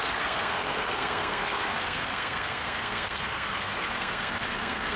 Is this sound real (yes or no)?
no